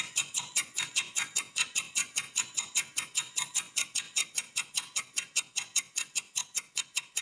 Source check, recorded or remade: remade